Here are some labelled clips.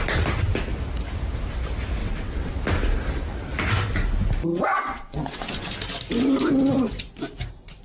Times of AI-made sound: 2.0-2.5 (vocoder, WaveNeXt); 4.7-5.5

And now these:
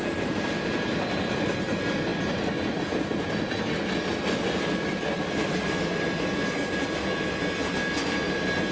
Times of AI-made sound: none

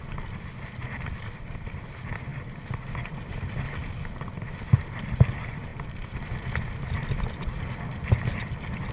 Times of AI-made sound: none

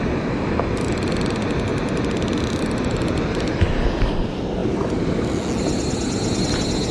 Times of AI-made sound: none

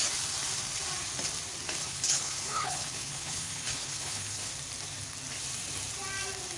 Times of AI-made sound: 1.8-4.5 (codec, HILCodec)

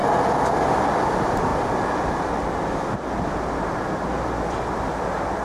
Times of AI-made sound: 0.7-1.5 (vocoder, BigVGAN v2); 4.1-5.4

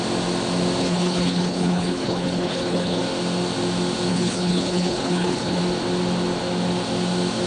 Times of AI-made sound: 0.8-3.0 (codec, HILCodec); 4.1-5.6

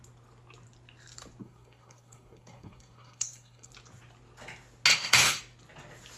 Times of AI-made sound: 1.4-3.7 (codec, SNAC); 4.9-5.4